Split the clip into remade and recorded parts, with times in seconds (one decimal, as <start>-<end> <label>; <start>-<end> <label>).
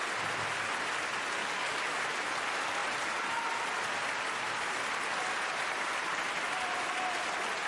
0.0-1.4 recorded; 1.4-2.0 remade; 2.0-7.7 recorded